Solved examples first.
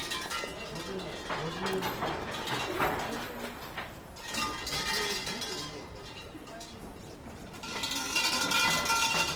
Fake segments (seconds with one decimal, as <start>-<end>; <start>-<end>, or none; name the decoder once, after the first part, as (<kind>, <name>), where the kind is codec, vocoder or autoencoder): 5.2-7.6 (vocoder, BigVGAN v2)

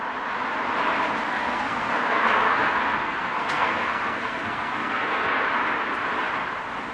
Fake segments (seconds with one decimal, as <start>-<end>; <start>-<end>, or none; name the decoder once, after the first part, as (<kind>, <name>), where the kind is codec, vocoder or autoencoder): 1.3-5.4 (codec, SNAC)

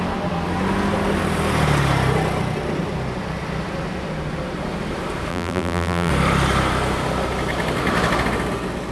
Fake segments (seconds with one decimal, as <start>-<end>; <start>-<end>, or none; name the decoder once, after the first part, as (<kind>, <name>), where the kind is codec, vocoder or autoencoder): 5.3-6.1 (vocoder, BigVGAN v2)

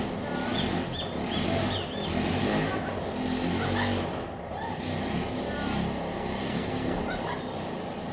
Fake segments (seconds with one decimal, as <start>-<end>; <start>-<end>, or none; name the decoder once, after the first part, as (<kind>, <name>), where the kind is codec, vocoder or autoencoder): 6.1-7.0 (codec, SNAC)

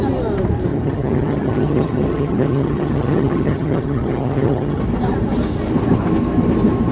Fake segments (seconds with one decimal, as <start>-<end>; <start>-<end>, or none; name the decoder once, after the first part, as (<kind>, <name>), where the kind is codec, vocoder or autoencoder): 0.7-4.8 (vocoder, HiFi-GAN)

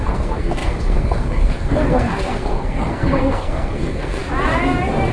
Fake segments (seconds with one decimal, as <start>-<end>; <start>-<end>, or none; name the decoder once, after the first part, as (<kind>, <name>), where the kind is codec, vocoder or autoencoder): 0.0-4.2 (codec, SNAC)